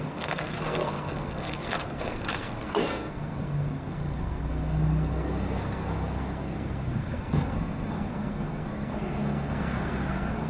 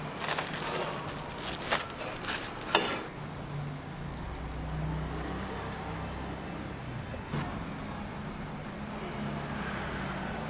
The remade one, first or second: first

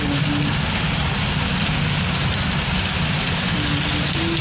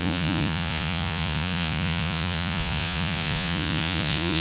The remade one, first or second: second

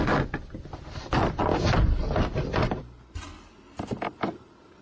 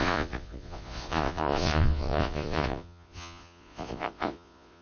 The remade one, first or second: second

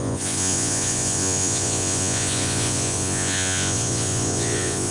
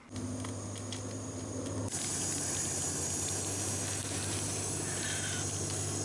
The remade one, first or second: first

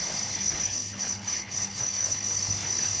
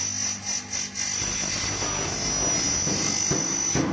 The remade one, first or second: first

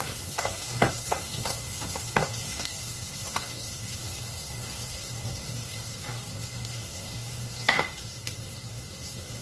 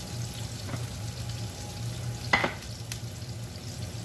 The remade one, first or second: first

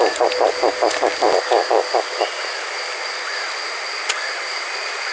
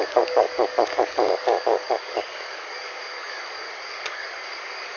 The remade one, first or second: second